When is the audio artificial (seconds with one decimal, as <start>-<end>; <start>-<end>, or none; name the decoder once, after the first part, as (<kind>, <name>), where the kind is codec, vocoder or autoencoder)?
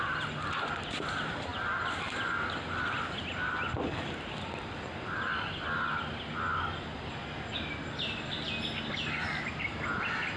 none